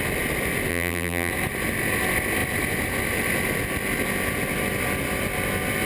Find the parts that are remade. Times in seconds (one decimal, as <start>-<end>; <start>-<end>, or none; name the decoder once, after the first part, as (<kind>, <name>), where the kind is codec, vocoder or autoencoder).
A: 0.7-1.3 (vocoder, BigVGAN v2)